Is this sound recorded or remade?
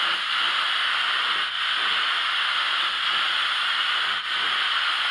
recorded